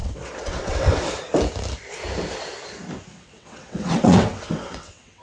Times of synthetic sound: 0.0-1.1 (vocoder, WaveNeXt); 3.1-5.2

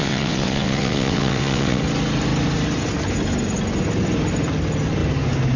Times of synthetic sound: 0.0-1.8 (vocoder, WaveNeXt)